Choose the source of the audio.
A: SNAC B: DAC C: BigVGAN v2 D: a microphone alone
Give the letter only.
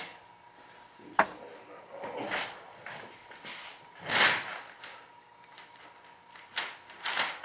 D